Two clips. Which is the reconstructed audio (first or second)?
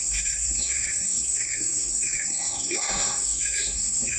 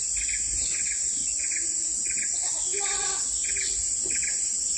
first